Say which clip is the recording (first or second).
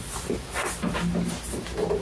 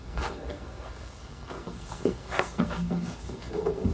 first